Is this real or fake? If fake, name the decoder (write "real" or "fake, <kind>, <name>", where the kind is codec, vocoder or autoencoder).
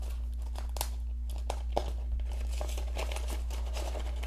real